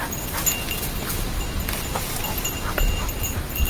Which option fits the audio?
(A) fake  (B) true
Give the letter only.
B